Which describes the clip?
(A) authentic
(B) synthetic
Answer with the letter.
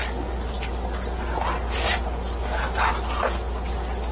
A